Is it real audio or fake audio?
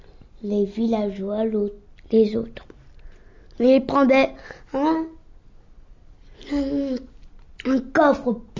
real